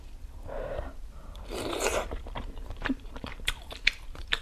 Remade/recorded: remade